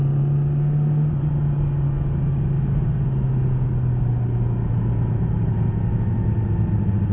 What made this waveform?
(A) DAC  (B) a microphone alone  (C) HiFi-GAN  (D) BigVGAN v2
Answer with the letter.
B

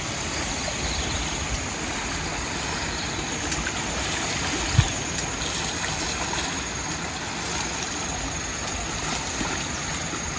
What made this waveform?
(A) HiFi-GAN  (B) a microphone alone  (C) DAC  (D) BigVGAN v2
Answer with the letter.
B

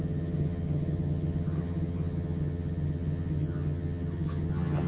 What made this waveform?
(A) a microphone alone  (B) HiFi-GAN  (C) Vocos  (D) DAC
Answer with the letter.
B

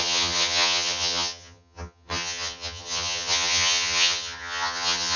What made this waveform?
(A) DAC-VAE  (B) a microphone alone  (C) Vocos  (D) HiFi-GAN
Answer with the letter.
D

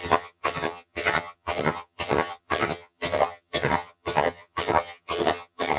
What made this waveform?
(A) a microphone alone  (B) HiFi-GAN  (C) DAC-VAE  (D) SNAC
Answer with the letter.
B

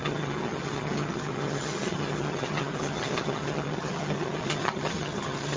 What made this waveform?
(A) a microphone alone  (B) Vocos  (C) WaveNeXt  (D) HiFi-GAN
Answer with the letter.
D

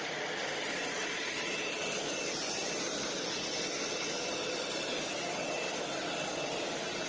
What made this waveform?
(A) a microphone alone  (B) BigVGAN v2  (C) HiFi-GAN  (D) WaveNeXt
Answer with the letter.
A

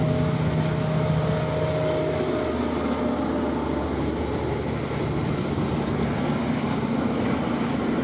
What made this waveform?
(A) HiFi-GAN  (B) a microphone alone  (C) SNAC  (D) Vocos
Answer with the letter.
B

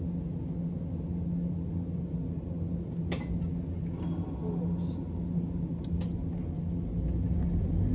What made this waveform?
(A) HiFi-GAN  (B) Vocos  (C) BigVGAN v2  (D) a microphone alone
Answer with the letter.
D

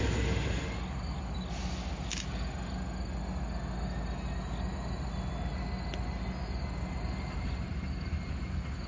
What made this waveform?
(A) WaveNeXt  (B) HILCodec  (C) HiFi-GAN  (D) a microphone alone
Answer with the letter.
D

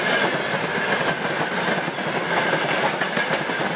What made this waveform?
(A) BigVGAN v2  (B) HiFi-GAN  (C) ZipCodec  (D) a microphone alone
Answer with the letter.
D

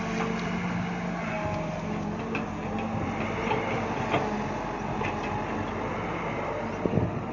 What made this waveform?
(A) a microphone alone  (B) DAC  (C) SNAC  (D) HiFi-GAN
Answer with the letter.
A